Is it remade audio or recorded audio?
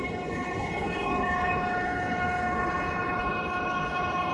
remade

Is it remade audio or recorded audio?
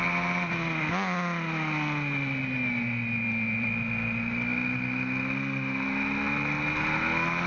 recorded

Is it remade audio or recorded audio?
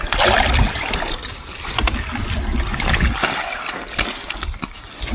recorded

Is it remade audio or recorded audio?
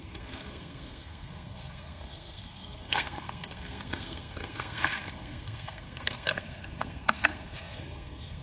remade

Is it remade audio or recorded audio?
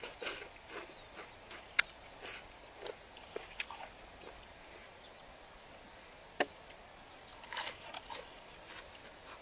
recorded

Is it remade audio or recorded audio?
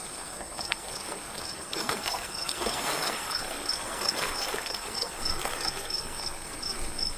remade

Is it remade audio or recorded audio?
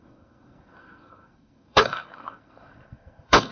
remade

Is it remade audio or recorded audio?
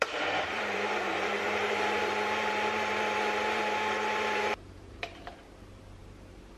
remade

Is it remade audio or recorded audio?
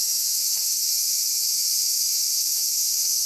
remade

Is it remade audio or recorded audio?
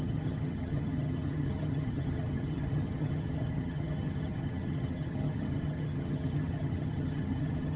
remade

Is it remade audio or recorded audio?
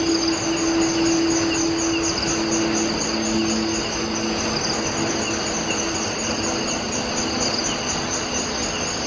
recorded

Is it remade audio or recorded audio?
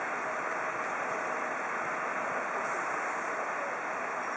recorded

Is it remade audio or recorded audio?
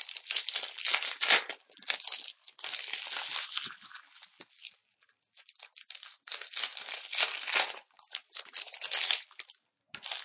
recorded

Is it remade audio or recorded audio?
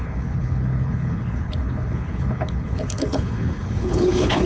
remade